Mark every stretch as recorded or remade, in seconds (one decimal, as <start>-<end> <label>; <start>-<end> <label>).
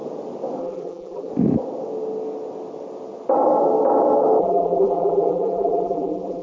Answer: 0.0-0.6 recorded; 0.6-1.3 remade; 1.3-4.4 recorded; 4.4-6.4 remade